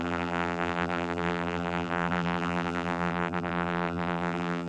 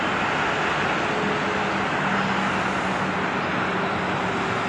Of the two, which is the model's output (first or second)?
first